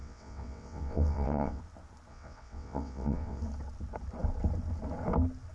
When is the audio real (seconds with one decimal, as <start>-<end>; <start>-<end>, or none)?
1.6-2.1; 3.4-5.5